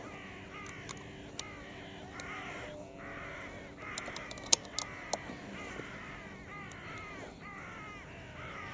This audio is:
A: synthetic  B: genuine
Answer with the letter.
B